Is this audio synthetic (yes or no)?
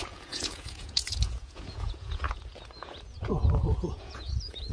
yes